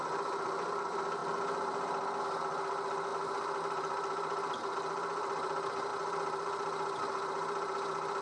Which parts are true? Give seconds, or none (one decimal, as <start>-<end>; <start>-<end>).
3.1-3.6